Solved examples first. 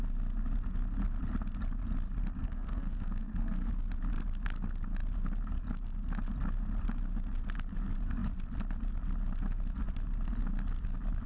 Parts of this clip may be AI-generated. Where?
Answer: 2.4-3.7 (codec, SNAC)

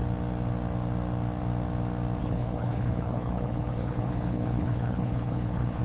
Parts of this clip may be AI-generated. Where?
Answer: 2.2-5.8 (codec, HILCodec)

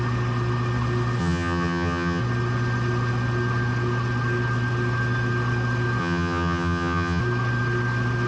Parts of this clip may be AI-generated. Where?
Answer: 1.2-2.2 (vocoder, HiFi-GAN); 6.0-7.2

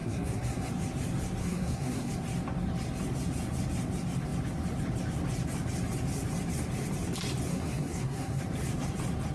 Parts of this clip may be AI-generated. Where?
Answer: 0.0-0.7 (codec, SNAC); 1.4-2.1; 7.5-8.4